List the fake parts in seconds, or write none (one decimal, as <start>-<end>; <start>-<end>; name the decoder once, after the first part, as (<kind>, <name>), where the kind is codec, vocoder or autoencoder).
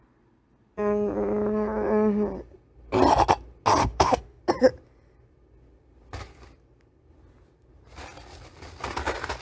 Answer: 3.8-4.4 (autoencoder, DAC-VAE)